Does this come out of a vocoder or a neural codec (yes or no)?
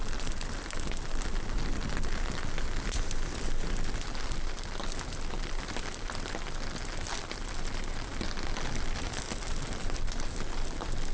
no